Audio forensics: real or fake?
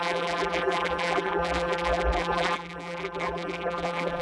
fake